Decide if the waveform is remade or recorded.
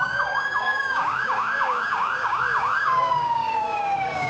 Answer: remade